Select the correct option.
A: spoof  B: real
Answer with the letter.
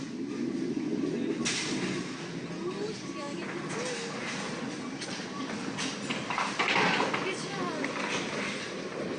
B